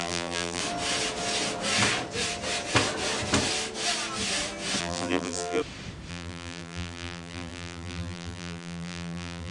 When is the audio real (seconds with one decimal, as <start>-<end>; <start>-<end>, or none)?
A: 0.6-4.8; 5.6-6.1